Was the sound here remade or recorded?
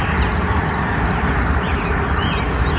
recorded